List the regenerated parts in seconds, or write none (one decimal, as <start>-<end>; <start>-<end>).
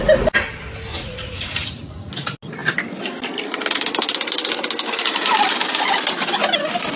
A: 0.9-2.1